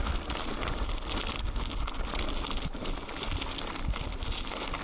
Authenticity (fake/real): real